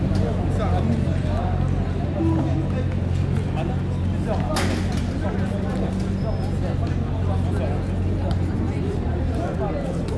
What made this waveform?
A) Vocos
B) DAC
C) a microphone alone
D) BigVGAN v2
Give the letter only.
C